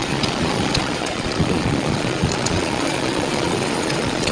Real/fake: fake